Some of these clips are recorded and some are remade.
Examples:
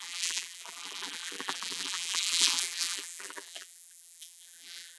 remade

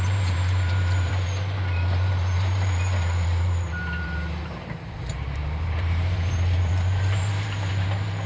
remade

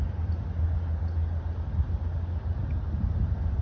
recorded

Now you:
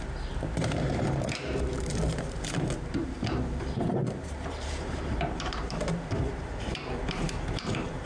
remade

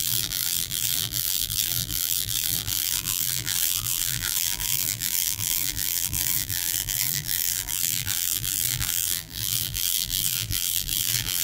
remade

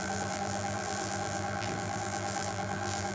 remade